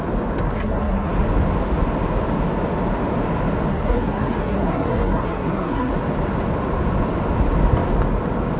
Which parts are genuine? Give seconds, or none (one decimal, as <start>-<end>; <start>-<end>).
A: 0.0-0.4; 1.1-3.7; 5.9-8.6